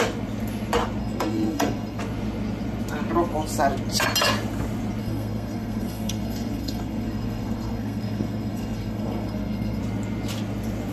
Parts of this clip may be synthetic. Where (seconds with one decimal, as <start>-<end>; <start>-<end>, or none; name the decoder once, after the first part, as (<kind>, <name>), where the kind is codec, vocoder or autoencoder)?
1.0-2.0 (codec, SNAC); 5.0-9.8